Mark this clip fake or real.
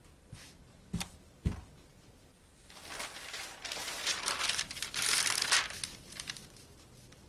real